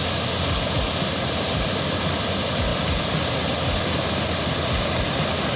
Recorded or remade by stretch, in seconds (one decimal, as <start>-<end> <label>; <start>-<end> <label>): 0.0-5.6 recorded

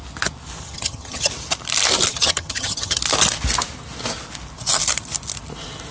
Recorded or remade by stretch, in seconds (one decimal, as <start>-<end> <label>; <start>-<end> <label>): 0.0-0.6 recorded; 0.6-1.3 remade; 1.3-2.1 recorded; 2.1-3.0 remade; 3.0-5.9 recorded

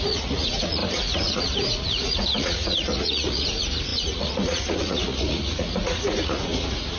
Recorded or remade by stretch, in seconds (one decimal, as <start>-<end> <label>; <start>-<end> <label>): 0.0-7.0 remade

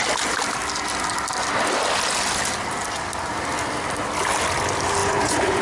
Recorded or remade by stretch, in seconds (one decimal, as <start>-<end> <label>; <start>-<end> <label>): 0.0-5.0 recorded; 5.0-5.6 remade